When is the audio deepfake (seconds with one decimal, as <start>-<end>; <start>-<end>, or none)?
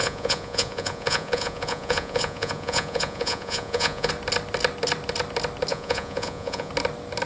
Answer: 0.0-4.1; 5.7-6.7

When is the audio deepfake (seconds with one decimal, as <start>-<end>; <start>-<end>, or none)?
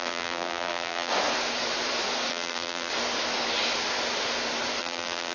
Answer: 0.0-1.1; 2.3-2.9; 4.8-5.3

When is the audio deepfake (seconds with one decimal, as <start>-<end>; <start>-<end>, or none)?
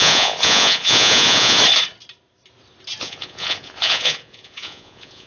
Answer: 0.0-1.6; 3.0-5.3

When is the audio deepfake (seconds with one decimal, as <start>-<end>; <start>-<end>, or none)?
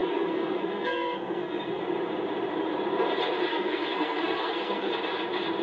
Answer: 0.0-1.8; 3.5-4.9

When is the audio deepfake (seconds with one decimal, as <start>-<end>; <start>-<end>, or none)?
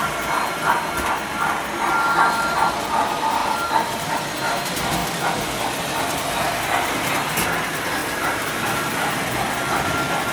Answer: 3.4-4.1; 8.0-9.1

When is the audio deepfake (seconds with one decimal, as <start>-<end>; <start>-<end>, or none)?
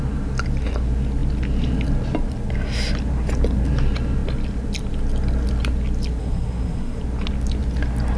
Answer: 6.2-7.0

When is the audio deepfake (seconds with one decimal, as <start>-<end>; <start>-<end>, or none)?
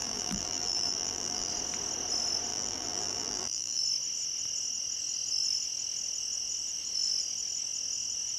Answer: 0.0-1.5; 2.5-3.8